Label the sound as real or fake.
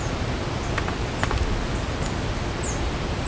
real